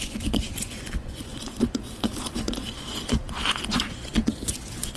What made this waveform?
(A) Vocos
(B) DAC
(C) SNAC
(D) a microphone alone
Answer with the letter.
A